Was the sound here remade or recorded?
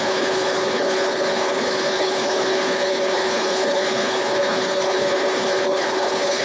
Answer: remade